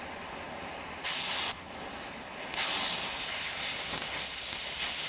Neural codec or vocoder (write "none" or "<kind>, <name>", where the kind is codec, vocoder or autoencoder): none